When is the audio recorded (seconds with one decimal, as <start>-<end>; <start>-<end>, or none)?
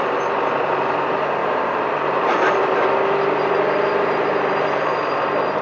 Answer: 0.0-1.4; 4.8-5.6